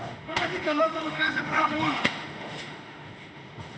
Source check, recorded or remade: remade